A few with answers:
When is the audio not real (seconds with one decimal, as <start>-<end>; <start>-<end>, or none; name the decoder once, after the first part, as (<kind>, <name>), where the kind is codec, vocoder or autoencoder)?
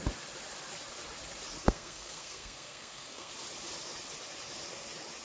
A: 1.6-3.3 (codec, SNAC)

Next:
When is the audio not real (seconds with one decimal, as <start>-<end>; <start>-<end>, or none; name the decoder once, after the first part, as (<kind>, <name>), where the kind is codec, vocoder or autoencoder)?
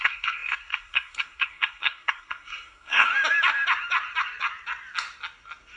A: 0.0-3.1 (codec, SNAC)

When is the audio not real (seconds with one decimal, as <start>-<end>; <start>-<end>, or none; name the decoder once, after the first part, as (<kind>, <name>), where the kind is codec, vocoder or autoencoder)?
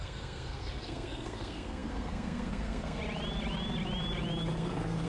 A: 0.0-3.0 (codec, SNAC); 4.5-5.1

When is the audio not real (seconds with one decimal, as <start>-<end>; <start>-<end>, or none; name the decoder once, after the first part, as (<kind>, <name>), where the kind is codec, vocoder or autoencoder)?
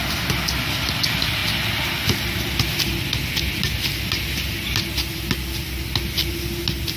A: none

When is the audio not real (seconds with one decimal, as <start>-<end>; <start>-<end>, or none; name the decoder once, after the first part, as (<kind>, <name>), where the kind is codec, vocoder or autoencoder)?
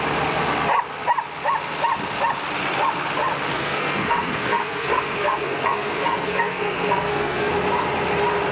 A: 3.5-7.5 (codec, SNAC)